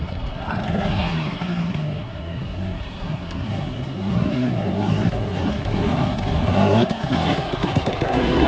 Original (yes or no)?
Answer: no